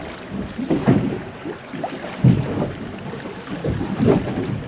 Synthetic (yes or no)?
yes